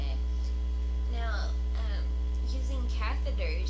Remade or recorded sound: recorded